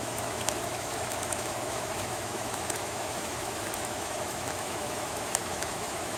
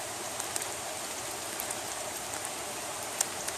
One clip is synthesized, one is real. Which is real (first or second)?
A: second